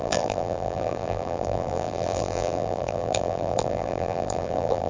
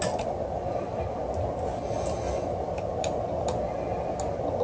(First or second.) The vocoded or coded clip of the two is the first